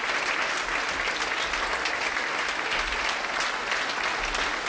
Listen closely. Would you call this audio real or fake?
real